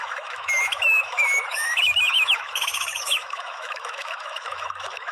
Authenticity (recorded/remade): remade